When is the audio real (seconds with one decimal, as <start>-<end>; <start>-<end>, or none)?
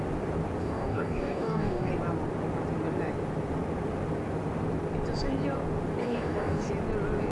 0.0-0.6; 1.9-6.0; 6.7-7.3